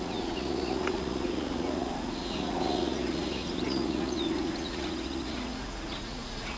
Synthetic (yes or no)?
yes